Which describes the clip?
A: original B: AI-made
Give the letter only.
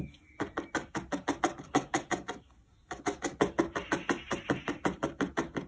A